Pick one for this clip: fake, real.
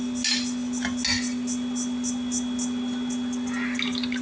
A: real